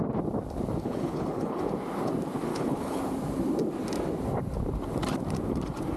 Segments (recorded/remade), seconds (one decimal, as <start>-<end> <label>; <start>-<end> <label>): 0.0-0.8 recorded; 0.8-1.6 remade; 1.6-2.5 recorded; 2.5-3.0 remade; 3.0-6.0 recorded

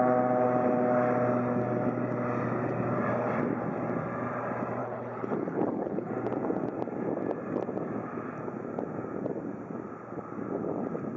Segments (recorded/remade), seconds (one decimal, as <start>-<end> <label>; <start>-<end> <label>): 0.0-4.8 recorded; 4.8-6.1 remade; 6.1-11.2 recorded

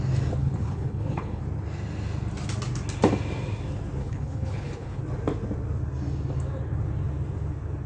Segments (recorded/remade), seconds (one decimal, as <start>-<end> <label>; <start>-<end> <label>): 0.0-0.4 recorded; 0.4-1.4 remade; 1.4-4.0 recorded; 4.0-5.0 remade; 5.0-7.9 recorded